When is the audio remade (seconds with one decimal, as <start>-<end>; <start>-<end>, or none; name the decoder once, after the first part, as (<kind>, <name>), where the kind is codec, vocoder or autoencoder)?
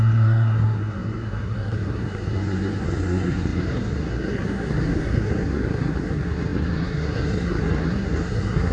0.0-8.7 (codec, SNAC)